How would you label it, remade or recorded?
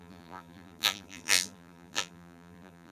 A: remade